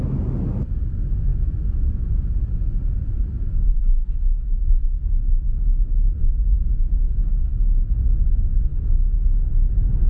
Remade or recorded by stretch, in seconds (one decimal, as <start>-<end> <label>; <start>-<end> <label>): 0.0-6.2 recorded; 6.2-7.4 remade; 7.4-10.1 recorded